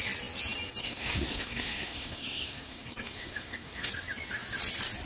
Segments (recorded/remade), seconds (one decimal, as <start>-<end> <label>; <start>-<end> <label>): 0.0-0.8 recorded; 0.8-3.9 remade; 3.9-5.1 recorded